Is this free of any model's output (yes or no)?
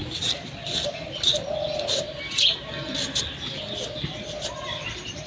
yes